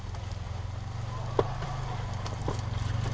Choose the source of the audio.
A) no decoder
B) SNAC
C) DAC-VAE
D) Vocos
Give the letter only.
A